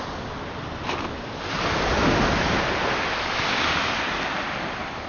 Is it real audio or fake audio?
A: real